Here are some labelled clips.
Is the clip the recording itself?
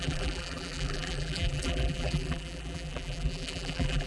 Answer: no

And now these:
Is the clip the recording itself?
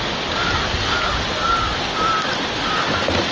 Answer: yes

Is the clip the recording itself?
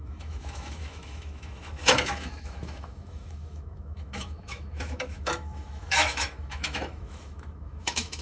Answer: no